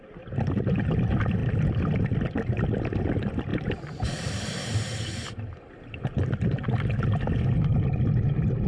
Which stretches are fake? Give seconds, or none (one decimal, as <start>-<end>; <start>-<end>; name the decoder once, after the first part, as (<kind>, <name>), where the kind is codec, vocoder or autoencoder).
1.4-1.9 (vocoder, BigVGAN v2)